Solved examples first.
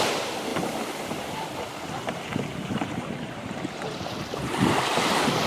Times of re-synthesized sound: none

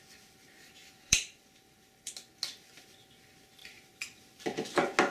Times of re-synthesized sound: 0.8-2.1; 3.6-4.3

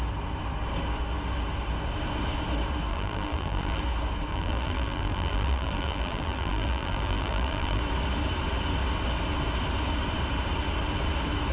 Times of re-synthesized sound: 2.9-3.8; 4.3-7.8

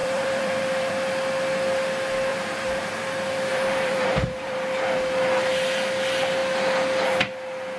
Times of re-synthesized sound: 0.0-0.9; 2.3-4.9

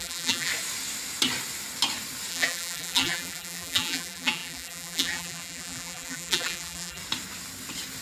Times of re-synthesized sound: 0.0-0.5; 2.3-7.0

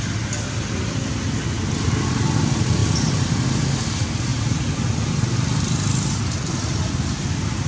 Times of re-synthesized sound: none

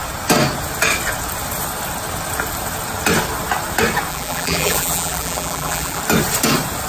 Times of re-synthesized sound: 4.1-6.0

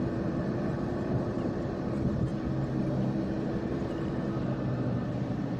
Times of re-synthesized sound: 0.0-2.3; 2.9-5.6